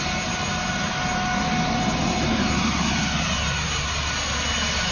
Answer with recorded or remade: recorded